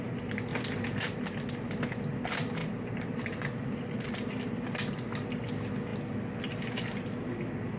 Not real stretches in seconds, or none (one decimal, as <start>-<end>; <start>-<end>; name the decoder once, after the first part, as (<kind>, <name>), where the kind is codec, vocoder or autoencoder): 2.6-4.1 (vocoder, BigVGAN v2)